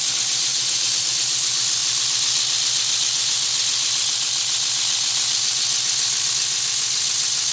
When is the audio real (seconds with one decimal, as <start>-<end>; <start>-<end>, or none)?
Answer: 0.0-0.5; 1.0-7.5